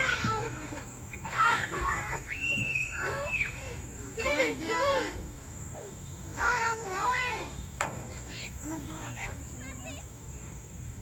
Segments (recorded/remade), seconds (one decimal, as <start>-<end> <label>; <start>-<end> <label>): 0.0-9.4 remade; 9.4-10.0 recorded; 10.0-11.0 remade